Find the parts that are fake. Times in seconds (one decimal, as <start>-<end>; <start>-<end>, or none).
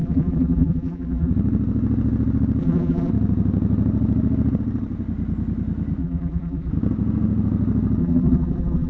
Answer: 0.0-1.3; 2.6-3.1; 6.0-6.7; 8.0-8.9